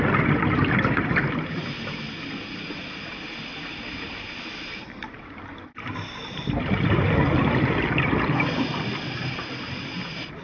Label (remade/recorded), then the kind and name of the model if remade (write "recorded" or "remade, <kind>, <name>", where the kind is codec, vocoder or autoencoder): recorded